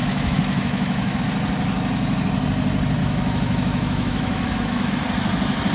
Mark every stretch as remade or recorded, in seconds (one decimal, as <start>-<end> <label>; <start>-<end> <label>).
0.0-1.2 remade; 1.2-3.0 recorded; 3.0-4.9 remade; 4.9-5.7 recorded